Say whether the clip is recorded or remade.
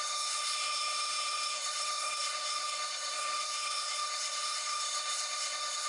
remade